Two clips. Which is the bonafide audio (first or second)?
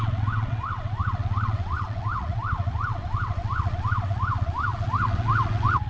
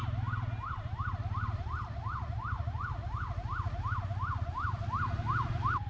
second